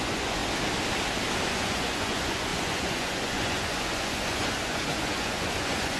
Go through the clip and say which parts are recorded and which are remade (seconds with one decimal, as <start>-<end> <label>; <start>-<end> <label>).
0.0-0.4 remade; 0.4-1.5 recorded; 1.5-6.0 remade